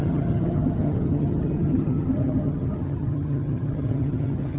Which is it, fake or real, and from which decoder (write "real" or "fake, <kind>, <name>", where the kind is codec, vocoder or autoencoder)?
fake, vocoder, HiFi-GAN